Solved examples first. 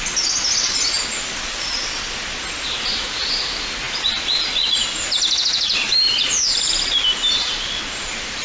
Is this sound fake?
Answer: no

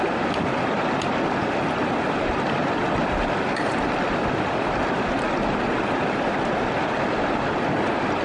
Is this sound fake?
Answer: no